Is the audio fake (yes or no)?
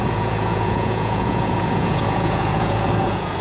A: yes